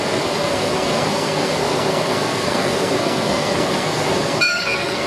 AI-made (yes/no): yes